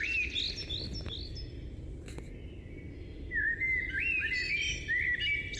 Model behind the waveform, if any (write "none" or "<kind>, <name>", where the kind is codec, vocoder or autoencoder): none